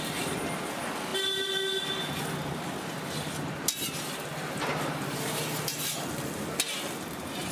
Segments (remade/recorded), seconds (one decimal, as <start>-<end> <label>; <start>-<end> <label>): 0.0-7.5 recorded